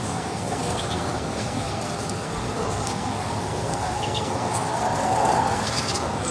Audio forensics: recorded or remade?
remade